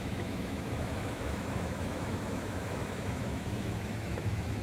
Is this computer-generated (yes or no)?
yes